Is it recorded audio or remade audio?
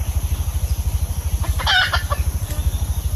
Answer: remade